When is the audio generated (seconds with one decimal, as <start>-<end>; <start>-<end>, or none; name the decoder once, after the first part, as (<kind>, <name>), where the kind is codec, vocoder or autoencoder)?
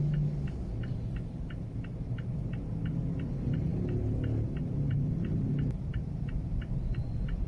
0.7-2.6 (vocoder, BigVGAN v2); 3.7-6.7